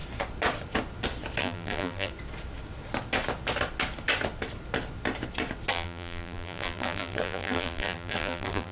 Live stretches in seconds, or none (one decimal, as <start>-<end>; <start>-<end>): 0.0-1.4; 2.1-5.7